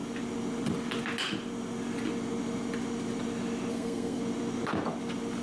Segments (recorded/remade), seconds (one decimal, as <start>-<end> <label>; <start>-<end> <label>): 0.0-3.7 recorded; 3.7-4.2 remade; 4.2-5.4 recorded